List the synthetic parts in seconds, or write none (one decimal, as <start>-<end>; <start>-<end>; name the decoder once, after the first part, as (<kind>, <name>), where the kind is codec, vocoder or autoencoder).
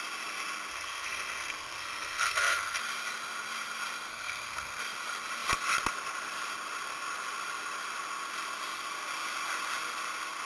0.7-2.8 (codec, SNAC); 4.1-4.8